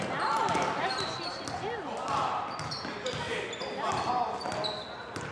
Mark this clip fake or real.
real